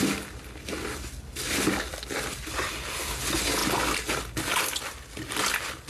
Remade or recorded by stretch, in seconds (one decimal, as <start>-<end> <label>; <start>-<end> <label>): 0.0-1.9 recorded; 1.9-2.7 remade; 2.7-5.9 recorded